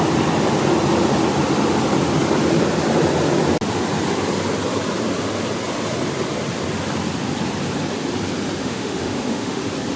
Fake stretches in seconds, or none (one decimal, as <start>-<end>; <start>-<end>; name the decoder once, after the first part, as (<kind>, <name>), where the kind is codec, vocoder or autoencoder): 8.6-9.6 (autoencoder, DAC-VAE)